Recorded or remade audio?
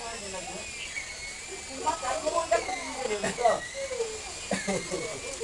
recorded